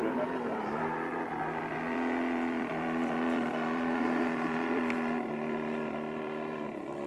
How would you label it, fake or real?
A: fake